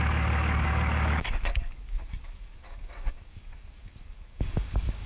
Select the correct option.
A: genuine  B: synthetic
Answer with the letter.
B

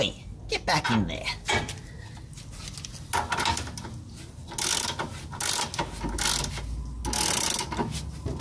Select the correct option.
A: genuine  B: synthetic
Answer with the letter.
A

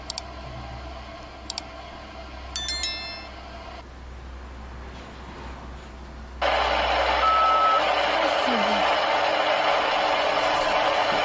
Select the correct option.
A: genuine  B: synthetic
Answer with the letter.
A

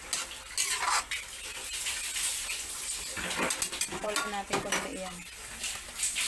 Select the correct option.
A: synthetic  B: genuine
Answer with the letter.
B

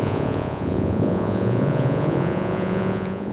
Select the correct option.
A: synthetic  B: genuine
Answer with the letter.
A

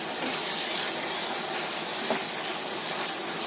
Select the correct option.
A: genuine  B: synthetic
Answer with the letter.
A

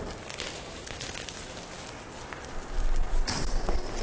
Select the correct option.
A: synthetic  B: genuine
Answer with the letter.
B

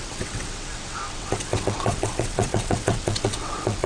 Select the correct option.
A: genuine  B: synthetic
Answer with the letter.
B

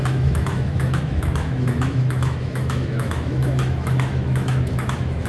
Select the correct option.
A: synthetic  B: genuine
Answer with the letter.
A